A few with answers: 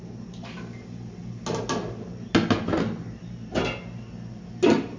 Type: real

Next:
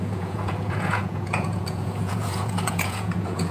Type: fake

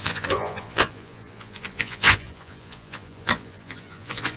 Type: fake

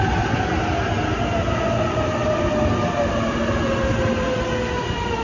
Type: real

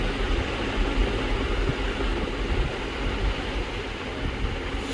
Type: real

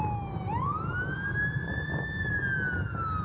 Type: real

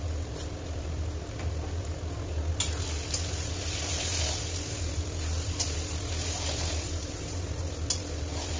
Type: real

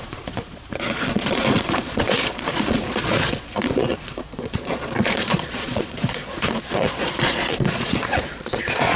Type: fake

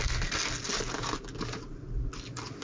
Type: real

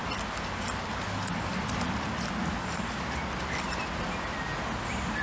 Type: real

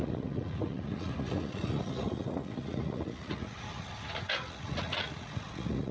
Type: fake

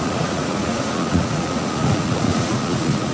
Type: fake